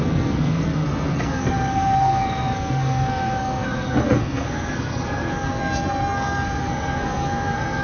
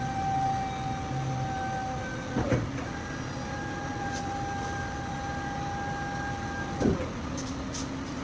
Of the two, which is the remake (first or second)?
first